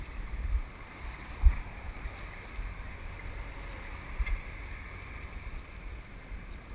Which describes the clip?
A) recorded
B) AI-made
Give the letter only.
A